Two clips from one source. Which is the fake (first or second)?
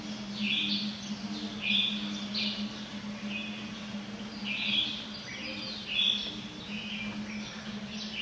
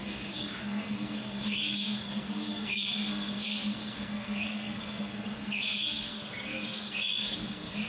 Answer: second